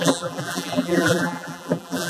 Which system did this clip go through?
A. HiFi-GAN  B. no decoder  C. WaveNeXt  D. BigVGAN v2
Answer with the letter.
D